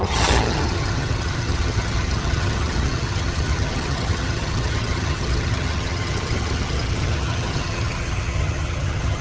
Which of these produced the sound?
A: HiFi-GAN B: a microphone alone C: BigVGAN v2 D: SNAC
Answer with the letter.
A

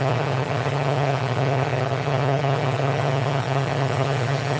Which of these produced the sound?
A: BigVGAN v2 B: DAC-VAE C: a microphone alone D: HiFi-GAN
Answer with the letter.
D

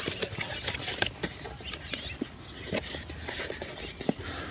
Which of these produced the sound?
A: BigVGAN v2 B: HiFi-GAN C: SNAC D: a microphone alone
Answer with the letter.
D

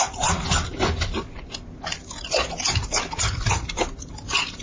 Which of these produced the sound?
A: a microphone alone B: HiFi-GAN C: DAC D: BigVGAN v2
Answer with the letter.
A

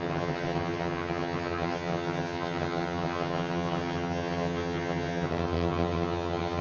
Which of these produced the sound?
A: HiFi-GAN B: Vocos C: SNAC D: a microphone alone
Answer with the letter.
A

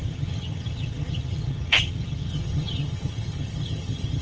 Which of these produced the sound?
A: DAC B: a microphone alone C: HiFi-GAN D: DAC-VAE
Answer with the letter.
C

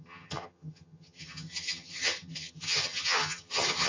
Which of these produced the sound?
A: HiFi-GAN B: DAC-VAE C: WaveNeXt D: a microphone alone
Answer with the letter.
A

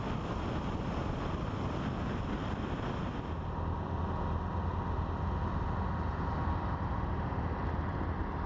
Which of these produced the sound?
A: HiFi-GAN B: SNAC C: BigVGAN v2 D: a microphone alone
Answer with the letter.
D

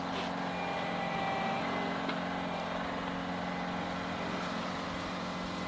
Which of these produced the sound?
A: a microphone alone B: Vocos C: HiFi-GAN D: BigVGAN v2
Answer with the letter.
A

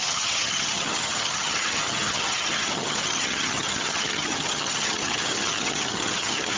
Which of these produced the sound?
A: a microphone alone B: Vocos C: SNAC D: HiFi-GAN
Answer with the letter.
D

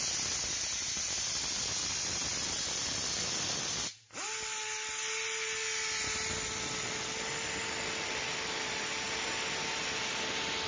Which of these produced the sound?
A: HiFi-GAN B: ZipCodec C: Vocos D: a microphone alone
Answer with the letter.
D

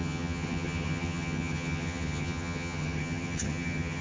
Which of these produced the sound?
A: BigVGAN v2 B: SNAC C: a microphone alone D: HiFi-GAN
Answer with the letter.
D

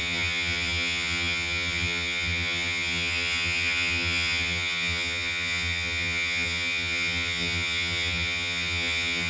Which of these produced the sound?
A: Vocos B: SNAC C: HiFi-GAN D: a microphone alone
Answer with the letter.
C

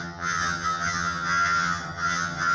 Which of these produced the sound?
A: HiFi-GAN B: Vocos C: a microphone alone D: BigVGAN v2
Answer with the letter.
A